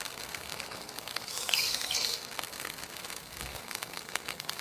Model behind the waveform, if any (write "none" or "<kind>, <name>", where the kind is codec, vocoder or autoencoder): codec, SNAC